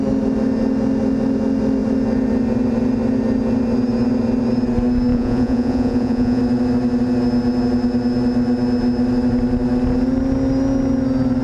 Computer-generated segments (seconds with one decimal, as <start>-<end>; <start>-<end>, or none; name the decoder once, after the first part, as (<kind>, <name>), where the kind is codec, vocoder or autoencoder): 5.1-6.4 (vocoder, Vocos)